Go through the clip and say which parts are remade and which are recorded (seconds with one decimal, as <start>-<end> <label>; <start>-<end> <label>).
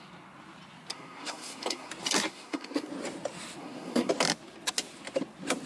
0.0-0.9 recorded; 0.9-1.9 remade; 1.9-2.3 recorded; 2.3-2.9 remade; 2.9-3.6 recorded; 3.6-4.1 remade; 4.1-5.7 recorded